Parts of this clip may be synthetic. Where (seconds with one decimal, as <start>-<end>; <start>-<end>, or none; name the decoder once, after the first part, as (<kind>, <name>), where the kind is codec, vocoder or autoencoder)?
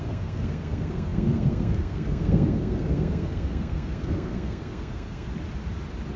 0.0-5.3 (codec, SNAC)